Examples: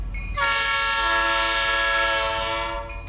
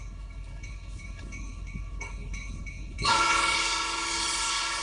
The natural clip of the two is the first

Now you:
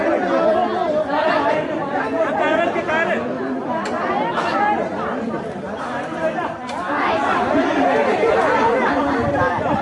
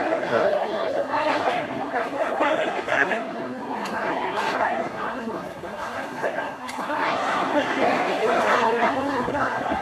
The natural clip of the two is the first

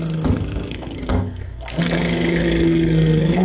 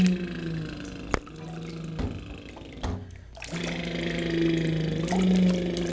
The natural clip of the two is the second